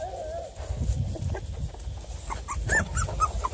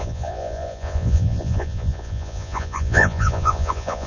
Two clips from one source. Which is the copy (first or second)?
second